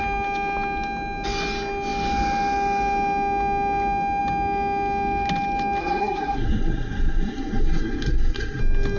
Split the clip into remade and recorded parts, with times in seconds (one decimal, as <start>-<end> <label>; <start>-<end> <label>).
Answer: 0.0-5.8 recorded; 5.8-8.6 remade; 8.6-9.0 recorded